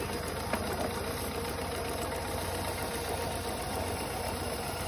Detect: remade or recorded recorded